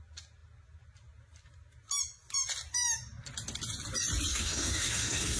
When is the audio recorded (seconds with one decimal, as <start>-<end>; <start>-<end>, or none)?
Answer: 0.0-4.3